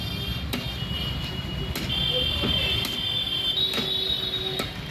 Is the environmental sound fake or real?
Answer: real